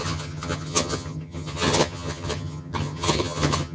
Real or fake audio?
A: fake